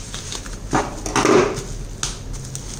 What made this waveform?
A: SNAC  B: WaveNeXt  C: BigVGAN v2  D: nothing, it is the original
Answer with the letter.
D